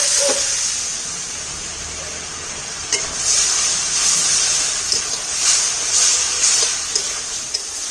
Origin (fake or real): real